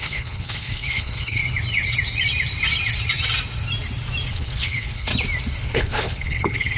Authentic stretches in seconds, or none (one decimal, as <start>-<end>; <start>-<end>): 1.4-4.3; 5.1-5.7